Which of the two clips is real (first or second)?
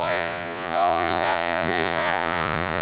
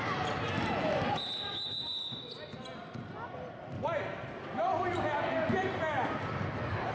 second